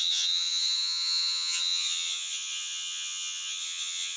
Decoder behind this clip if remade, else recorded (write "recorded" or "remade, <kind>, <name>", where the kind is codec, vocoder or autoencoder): remade, vocoder, HiFi-GAN